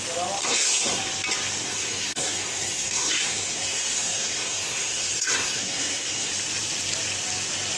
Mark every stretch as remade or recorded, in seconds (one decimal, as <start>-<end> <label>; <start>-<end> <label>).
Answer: 0.0-0.4 recorded; 0.4-1.0 remade; 1.0-1.6 recorded; 1.6-6.3 remade; 6.3-7.8 recorded